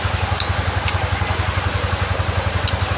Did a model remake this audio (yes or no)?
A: no